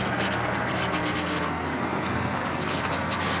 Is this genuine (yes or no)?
no